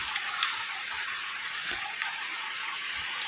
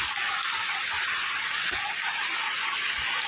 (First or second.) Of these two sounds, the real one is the second